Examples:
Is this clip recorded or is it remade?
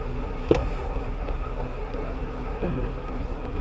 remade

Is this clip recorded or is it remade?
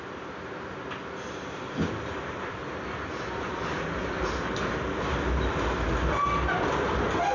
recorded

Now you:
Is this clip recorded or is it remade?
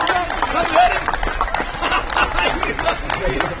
recorded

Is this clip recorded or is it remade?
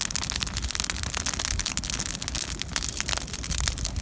recorded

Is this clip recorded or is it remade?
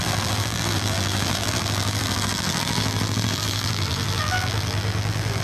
remade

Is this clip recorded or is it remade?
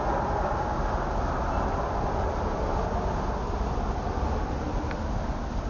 recorded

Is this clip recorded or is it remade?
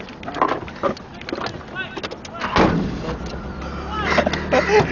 recorded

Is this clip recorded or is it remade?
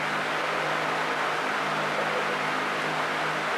recorded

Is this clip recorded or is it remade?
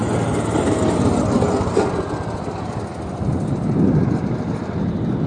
recorded